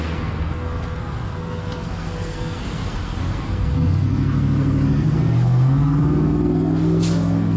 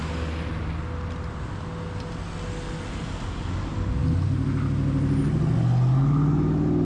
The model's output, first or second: first